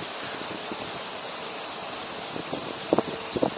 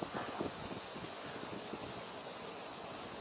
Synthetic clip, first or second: second